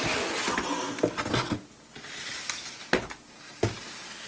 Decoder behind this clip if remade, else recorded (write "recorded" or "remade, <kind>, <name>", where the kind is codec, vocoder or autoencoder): recorded